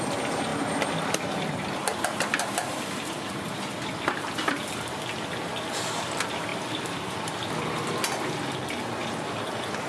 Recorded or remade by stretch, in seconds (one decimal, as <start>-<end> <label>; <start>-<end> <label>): 0.0-0.5 recorded; 0.5-4.5 remade; 4.5-9.9 recorded